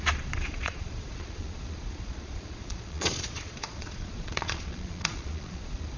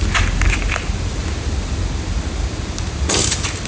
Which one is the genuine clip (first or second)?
second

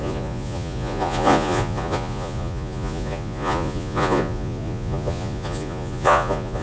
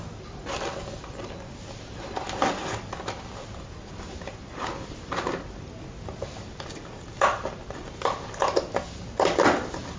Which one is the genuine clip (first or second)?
second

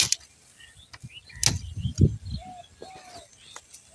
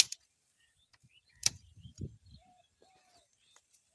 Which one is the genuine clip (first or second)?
first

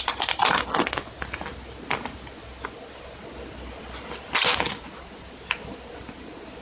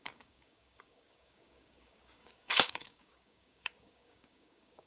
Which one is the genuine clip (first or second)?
first